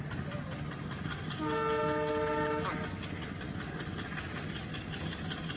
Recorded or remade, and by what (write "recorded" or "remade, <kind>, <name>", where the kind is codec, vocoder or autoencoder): recorded